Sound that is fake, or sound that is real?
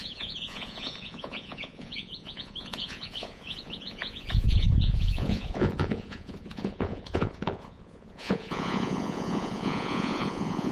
fake